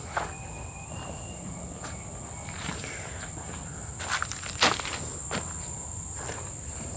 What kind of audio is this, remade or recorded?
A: remade